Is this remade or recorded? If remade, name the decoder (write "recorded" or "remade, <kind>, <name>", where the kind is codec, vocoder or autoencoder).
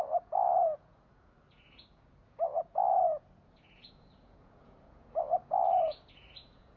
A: remade, vocoder, Vocos